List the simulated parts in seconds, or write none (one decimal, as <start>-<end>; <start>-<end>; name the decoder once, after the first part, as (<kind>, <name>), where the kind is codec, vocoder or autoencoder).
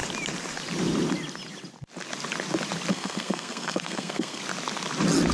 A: 2.9-4.4 (codec, SNAC)